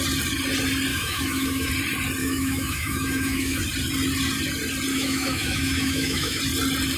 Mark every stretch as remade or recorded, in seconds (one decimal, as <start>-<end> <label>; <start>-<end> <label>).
0.0-0.9 recorded; 0.9-1.7 remade; 1.7-2.2 recorded; 2.2-3.6 remade; 3.6-4.9 recorded; 4.9-6.4 remade; 6.4-7.0 recorded